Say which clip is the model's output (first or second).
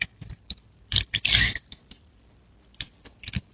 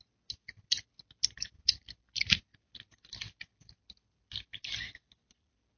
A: first